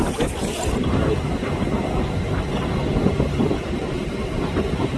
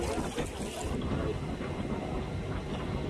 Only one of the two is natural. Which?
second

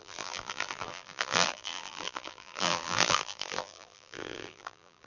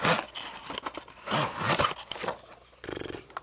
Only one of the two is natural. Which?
second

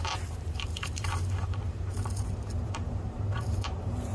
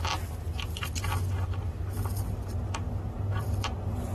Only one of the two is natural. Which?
second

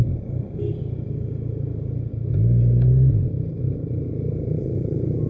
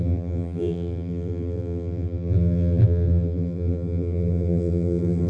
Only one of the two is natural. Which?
first